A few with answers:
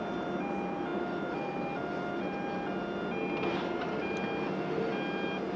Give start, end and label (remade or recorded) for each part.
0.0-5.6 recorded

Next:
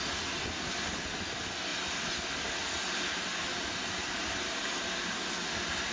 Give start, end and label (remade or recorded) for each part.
0.0-5.9 recorded